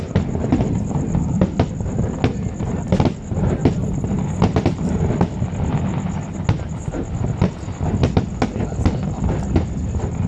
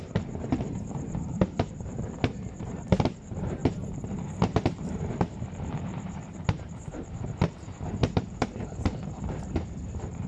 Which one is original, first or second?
first